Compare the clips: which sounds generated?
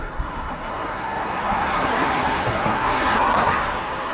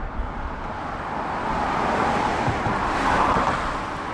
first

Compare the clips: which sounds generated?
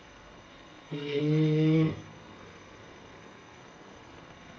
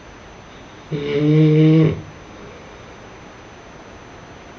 first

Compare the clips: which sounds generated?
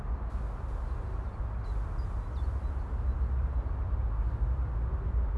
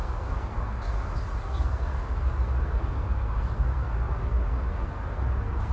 second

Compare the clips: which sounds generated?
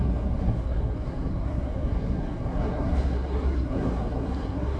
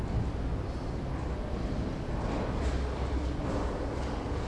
first